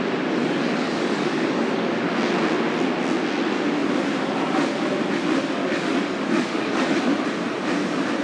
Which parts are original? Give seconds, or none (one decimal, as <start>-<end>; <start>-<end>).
0.0-0.4; 1.9-5.6; 7.0-8.2